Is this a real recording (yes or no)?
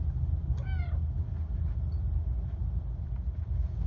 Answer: yes